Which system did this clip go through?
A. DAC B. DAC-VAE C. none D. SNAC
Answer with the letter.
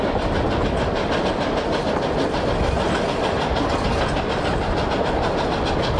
C